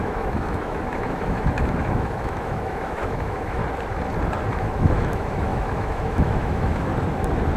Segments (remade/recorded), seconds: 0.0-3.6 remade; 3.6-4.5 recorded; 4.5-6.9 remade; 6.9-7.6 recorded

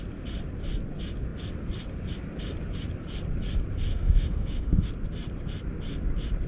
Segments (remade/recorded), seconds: 0.0-3.9 recorded; 3.9-4.9 remade; 4.9-6.5 recorded

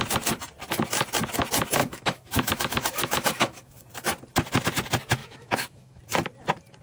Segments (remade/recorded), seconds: 0.0-1.8 recorded; 1.8-3.8 remade; 3.8-5.2 recorded; 5.2-6.0 remade; 6.0-6.8 recorded

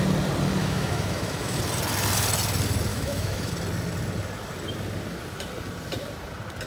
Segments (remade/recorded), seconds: 0.0-0.6 recorded; 0.6-1.6 remade; 1.6-2.9 recorded; 2.9-3.5 remade; 3.5-6.7 recorded

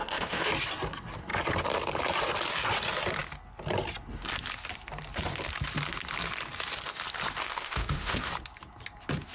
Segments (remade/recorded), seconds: 0.0-0.5 remade; 0.5-7.4 recorded; 7.4-8.3 remade; 8.3-9.3 recorded